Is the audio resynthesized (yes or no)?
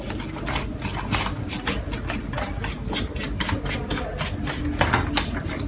no